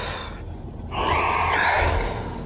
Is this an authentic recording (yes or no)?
yes